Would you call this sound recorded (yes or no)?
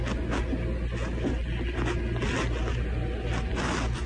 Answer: yes